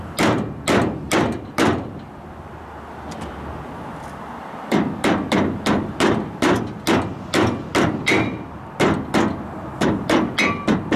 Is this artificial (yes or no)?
no